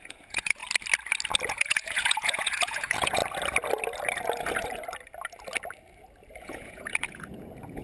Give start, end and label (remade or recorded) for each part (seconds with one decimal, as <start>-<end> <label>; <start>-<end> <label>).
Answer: 0.0-0.6 remade; 0.6-1.5 recorded; 1.5-3.2 remade; 3.2-6.4 recorded; 6.4-7.8 remade